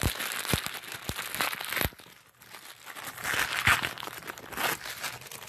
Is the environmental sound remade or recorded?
recorded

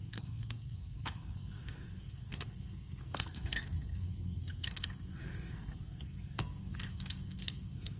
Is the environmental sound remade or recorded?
remade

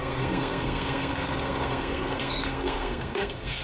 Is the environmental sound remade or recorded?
remade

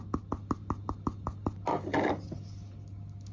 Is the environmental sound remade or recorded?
recorded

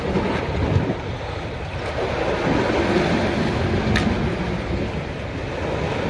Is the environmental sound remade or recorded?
recorded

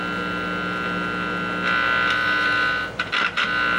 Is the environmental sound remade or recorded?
recorded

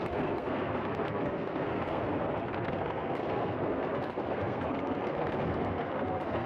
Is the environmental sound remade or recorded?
remade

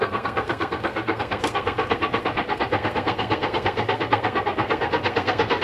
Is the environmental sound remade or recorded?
remade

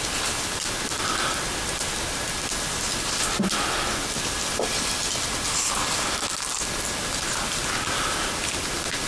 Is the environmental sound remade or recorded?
recorded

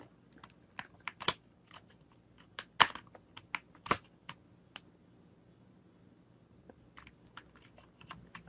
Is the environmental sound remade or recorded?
recorded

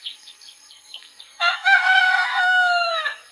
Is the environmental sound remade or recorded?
remade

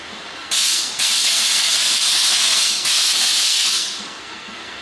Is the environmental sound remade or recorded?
remade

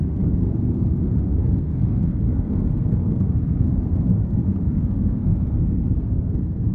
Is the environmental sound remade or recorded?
remade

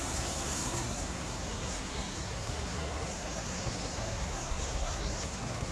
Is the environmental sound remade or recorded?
remade